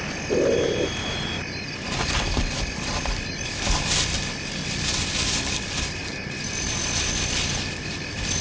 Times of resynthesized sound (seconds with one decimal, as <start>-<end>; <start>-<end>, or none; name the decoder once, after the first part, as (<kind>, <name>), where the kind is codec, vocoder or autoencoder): 6.0-6.7 (vocoder, BigVGAN v2)